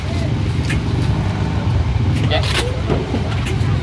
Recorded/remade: recorded